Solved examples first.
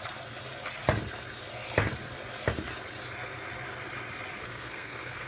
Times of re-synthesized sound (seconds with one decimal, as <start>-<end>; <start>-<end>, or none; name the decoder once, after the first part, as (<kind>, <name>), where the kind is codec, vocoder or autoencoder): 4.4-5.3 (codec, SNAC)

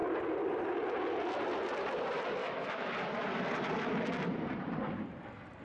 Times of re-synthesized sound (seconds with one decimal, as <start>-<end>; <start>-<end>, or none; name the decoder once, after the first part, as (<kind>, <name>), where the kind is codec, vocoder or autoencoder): 2.4-2.9 (autoencoder, DAC-VAE)

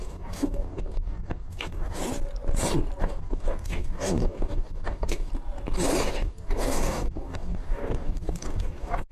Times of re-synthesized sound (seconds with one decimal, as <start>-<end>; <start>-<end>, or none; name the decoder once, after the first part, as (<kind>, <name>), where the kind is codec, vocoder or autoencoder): 0.0-2.0 (codec, DAC); 3.0-5.3; 6.1-9.1